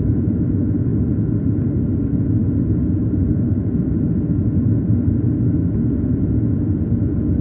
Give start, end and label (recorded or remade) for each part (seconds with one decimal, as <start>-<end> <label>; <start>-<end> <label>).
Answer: 0.0-0.9 recorded; 0.9-3.0 remade; 3.0-7.4 recorded